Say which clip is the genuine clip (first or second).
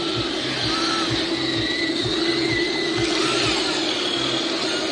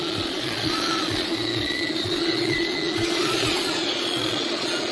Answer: first